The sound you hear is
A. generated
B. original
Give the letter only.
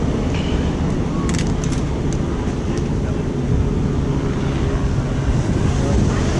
B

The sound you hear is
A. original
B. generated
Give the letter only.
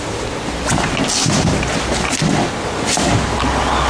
A